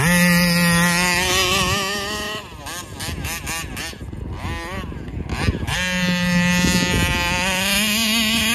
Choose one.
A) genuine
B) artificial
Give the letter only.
A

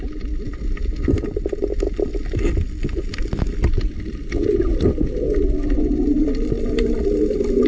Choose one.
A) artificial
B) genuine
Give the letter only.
B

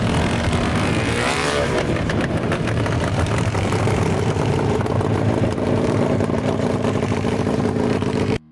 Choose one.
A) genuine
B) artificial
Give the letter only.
B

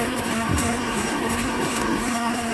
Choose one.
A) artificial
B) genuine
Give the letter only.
A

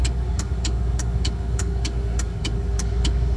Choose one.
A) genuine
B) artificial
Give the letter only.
B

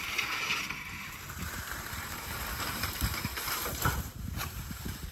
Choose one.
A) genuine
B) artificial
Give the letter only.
B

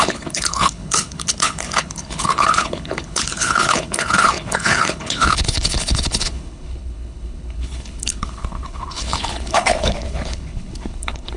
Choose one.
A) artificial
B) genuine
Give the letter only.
A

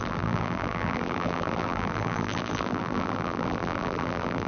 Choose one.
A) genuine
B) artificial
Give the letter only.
B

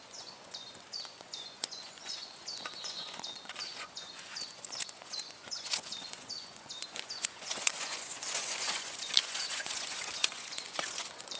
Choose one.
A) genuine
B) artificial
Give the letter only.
B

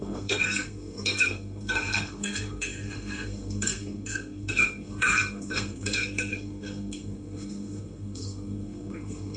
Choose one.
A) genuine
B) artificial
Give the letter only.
B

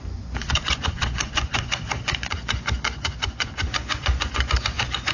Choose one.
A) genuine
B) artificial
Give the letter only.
B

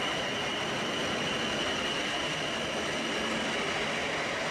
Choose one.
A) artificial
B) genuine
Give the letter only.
B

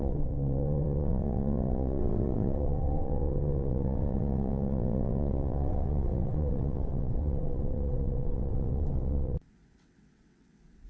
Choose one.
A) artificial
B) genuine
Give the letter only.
A